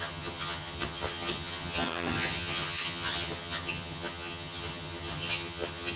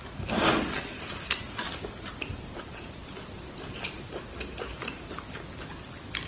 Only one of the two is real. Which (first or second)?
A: second